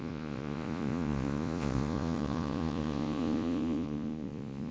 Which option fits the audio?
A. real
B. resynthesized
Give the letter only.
B